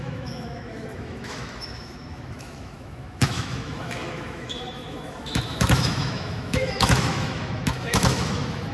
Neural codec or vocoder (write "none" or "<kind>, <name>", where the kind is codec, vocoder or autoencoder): autoencoder, DAC-VAE